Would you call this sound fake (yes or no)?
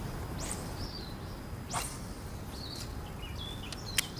no